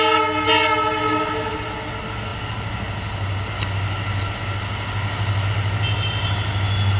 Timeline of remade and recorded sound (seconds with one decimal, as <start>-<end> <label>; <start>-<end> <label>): 0.0-7.0 recorded